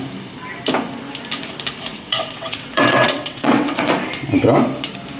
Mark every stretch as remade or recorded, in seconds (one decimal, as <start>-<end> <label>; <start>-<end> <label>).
0.0-1.9 recorded; 1.9-3.9 remade; 3.9-5.2 recorded